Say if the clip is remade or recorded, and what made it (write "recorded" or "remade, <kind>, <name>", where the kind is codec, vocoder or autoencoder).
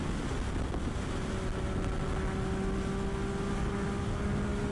recorded